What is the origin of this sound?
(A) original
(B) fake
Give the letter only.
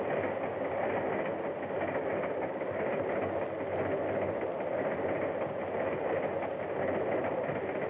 A